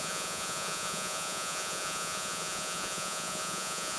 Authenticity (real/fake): fake